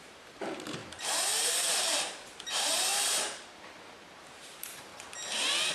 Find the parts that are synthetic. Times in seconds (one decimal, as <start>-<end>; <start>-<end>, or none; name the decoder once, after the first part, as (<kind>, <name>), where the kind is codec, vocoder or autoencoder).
0.0-0.8 (vocoder, BigVGAN v2); 1.7-4.9

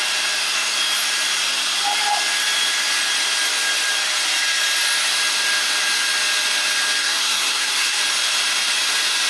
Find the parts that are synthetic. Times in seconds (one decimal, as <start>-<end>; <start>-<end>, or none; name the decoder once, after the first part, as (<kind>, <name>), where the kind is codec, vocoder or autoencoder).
7.0-8.0 (codec, SNAC)